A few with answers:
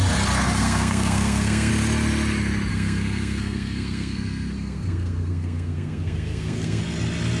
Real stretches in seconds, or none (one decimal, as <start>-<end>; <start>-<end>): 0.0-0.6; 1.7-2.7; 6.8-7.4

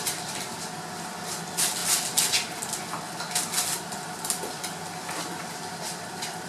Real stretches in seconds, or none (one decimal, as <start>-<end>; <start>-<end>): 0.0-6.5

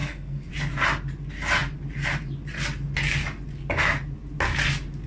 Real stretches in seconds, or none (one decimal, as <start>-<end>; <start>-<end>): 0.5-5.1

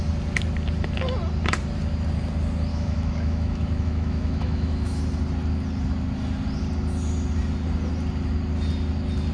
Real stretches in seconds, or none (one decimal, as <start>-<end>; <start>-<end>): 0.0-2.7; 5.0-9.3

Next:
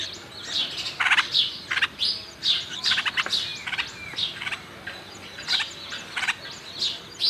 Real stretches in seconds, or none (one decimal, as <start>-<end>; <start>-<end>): 0.0-7.3

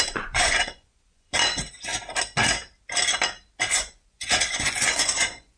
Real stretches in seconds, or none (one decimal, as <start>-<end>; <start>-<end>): 1.9-3.7

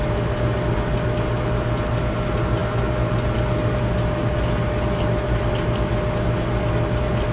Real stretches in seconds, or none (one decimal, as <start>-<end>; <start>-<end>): 0.0-7.3

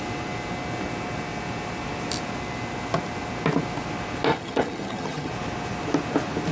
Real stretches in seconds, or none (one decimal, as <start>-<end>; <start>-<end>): 0.0-4.3; 5.3-6.5